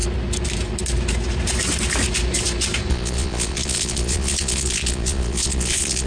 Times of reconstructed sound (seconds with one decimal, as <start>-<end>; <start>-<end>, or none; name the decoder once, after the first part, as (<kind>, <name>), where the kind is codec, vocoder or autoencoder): 2.9-6.1 (vocoder, Vocos)